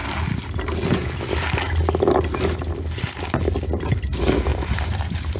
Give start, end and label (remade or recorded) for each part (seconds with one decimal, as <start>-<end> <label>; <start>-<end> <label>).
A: 0.0-4.5 recorded; 4.5-5.4 remade